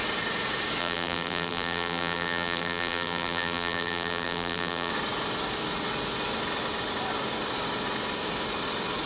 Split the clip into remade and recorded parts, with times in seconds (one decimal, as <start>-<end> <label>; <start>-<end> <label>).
0.0-0.8 recorded; 0.8-4.9 remade; 4.9-9.1 recorded